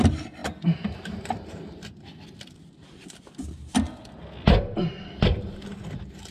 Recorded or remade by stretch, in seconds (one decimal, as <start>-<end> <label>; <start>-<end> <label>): 0.0-4.8 recorded; 4.8-5.4 remade; 5.4-6.3 recorded